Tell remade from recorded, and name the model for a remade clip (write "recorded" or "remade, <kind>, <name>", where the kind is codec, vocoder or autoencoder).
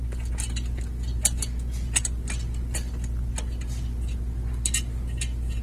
recorded